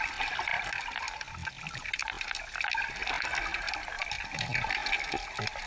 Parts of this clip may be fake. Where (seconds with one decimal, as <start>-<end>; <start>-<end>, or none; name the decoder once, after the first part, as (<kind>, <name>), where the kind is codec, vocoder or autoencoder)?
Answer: none